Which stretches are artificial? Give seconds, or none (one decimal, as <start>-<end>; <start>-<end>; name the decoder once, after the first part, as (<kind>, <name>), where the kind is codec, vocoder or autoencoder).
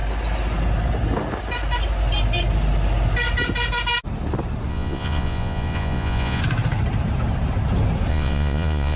4.7-6.4 (vocoder, Vocos); 8.1-9.0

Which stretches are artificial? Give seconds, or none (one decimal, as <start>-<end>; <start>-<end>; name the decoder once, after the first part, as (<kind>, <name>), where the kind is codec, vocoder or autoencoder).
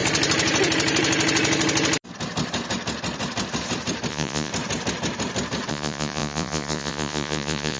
4.1-4.5 (vocoder, Vocos); 5.7-7.8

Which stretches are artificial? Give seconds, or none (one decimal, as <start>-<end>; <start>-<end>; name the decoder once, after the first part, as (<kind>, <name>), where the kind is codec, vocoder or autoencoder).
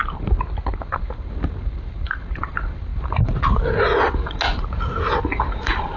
none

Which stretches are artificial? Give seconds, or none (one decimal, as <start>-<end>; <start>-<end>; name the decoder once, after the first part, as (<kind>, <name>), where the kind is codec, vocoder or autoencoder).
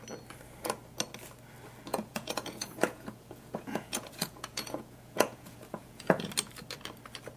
1.9-6.3 (vocoder, Vocos)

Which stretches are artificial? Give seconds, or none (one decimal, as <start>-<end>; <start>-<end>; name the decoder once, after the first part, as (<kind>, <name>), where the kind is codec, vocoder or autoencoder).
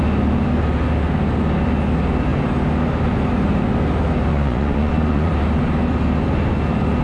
4.3-5.3 (vocoder, Vocos)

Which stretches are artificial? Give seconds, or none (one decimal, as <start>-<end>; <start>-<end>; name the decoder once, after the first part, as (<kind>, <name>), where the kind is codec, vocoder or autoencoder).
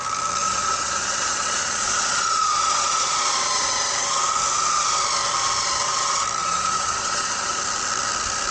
0.4-3.8 (vocoder, Vocos); 6.4-7.6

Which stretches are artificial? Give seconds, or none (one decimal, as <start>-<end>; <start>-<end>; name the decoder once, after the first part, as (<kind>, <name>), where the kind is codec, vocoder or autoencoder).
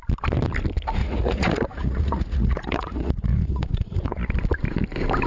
1.0-4.2 (vocoder, Vocos)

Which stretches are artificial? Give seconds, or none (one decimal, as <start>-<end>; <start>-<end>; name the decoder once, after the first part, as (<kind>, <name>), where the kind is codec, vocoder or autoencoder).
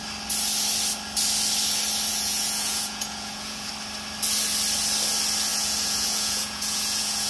2.1-3.7 (vocoder, Vocos); 5.5-7.3